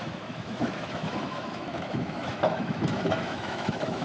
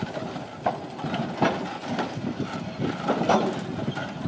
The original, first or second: second